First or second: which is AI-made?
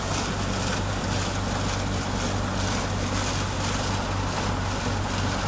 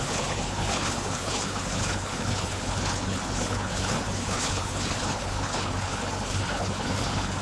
second